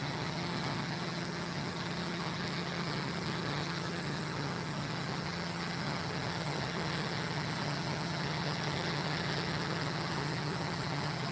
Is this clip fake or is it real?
fake